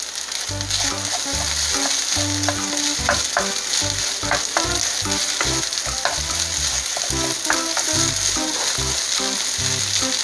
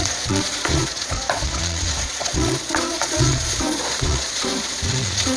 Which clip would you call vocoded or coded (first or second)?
second